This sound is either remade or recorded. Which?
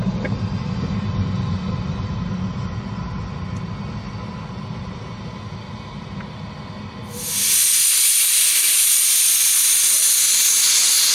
recorded